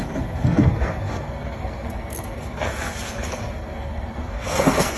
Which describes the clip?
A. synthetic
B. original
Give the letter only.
A